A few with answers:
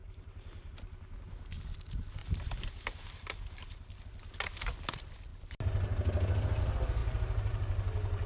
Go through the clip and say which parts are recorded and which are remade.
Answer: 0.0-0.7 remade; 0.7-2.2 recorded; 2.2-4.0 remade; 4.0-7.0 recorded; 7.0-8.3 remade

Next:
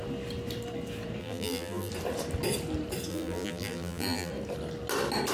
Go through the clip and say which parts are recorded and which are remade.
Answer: 0.0-1.2 recorded; 1.2-1.9 remade; 1.9-3.1 recorded; 3.1-4.3 remade; 4.3-5.3 recorded

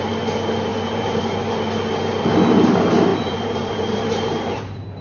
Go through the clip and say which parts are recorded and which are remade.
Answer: 0.0-0.7 recorded; 0.7-1.2 remade; 1.2-3.1 recorded; 3.1-4.6 remade; 4.6-5.0 recorded